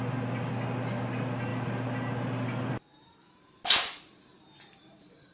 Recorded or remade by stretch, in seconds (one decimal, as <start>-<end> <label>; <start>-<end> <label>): 0.0-1.5 recorded; 1.5-2.7 remade; 2.7-5.3 recorded